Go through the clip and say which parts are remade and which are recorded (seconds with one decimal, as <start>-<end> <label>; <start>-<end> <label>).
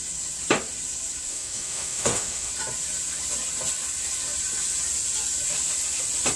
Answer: 0.0-1.3 recorded; 1.3-2.5 remade; 2.5-6.4 recorded